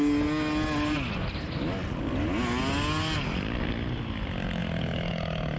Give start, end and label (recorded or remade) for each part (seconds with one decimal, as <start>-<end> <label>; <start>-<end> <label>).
0.0-5.6 recorded